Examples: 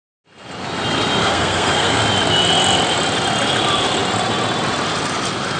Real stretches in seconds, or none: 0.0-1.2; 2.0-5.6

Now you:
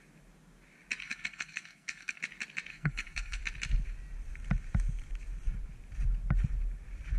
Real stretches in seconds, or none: 0.0-1.0; 2.2-2.7; 3.4-7.2

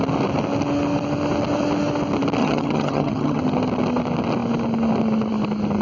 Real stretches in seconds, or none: 0.0-2.4; 3.4-5.8

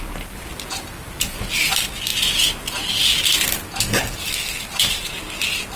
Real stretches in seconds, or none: 0.0-5.8